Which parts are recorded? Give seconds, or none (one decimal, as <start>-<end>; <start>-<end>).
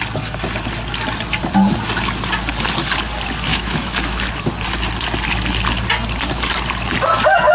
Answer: 0.0-3.5; 4.3-7.5